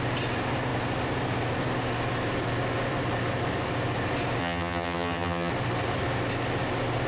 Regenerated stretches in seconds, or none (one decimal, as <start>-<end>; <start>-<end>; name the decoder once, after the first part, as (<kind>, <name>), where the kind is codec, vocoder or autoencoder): 4.4-5.5 (vocoder, HiFi-GAN)